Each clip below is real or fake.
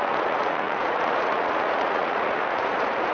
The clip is fake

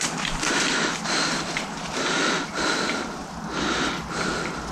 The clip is real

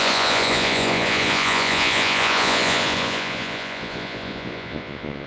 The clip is fake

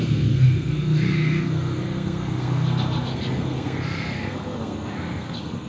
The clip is fake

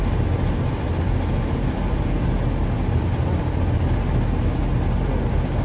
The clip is real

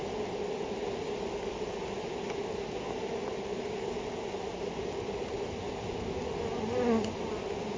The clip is real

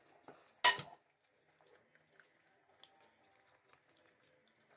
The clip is real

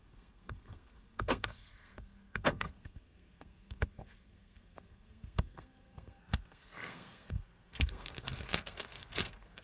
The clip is fake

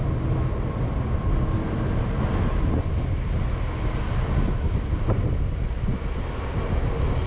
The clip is real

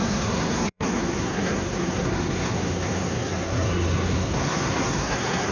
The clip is fake